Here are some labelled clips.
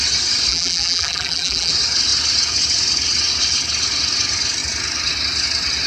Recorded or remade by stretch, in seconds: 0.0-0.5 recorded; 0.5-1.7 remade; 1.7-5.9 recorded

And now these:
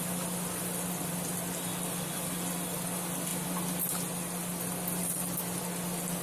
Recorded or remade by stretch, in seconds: 0.0-6.2 recorded

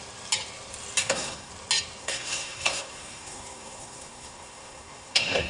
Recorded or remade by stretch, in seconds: 0.0-1.0 recorded; 1.0-1.5 remade; 1.5-2.0 recorded; 2.0-5.5 remade